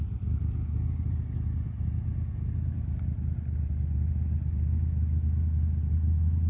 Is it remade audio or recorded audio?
recorded